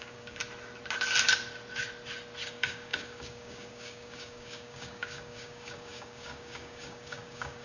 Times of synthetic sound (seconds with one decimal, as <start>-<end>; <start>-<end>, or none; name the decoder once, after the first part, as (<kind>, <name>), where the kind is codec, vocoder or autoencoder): 0.0-0.4 (codec, DAC); 2.5-7.6